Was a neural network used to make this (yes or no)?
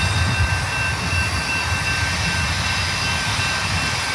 no